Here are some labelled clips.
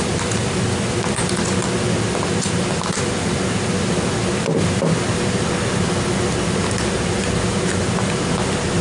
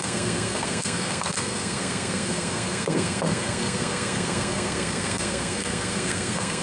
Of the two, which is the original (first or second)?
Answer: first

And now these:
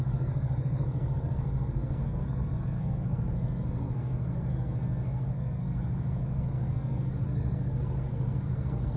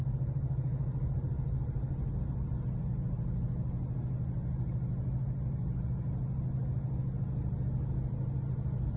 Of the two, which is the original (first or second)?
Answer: second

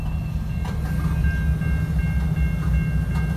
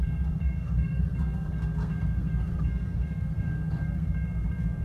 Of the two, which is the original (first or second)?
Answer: first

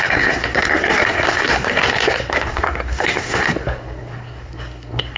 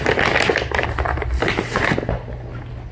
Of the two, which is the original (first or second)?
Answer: second